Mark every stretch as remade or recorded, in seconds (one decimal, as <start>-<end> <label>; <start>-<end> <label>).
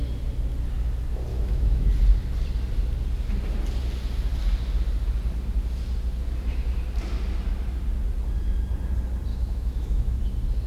0.0-1.3 recorded; 1.3-1.9 remade; 1.9-9.3 recorded; 9.3-10.2 remade; 10.2-10.7 recorded